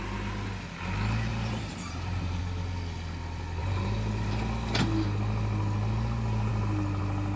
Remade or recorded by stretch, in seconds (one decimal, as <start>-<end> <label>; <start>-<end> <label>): 0.0-1.3 recorded; 1.3-2.4 remade; 2.4-3.6 recorded; 3.6-4.4 remade; 4.4-7.4 recorded